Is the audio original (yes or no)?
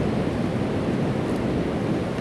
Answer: yes